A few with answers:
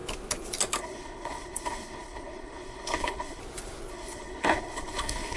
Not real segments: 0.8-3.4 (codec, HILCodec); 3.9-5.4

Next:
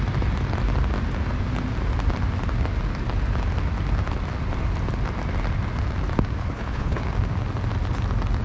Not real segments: 6.4-7.1 (codec, HILCodec)

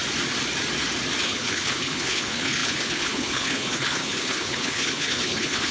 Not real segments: 1.2-5.7 (codec, HILCodec)

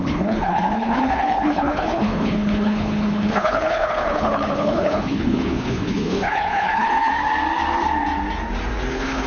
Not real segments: 0.0-7.1 (codec, HILCodec); 8.9-9.3

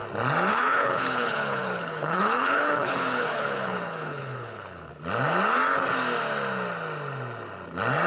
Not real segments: 0.5-4.9 (codec, HILCodec)

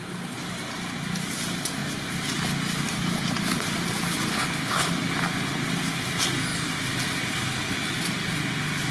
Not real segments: 4.3-4.9 (codec, HILCodec)